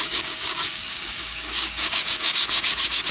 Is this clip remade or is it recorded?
remade